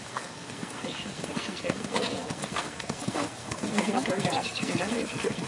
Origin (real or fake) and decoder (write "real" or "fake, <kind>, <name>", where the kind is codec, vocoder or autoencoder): fake, codec, SNAC